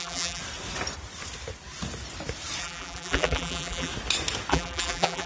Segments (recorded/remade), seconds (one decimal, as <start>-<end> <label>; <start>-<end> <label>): 0.0-0.4 remade; 0.4-2.6 recorded; 2.6-3.9 remade; 3.9-4.5 recorded; 4.5-5.3 remade